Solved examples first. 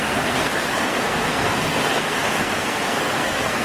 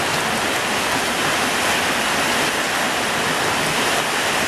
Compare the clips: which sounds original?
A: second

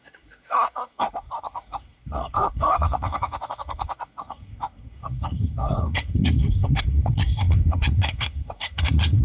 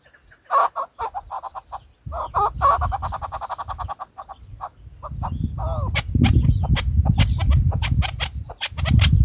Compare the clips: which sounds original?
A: second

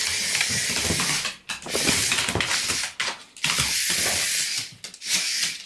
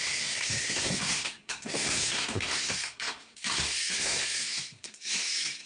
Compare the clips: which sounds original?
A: first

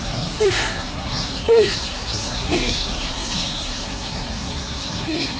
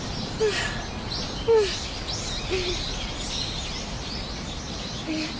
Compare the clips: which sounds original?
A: second